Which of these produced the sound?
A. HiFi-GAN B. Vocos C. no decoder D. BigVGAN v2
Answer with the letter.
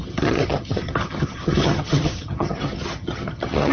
A